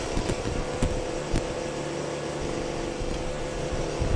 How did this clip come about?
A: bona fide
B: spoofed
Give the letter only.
A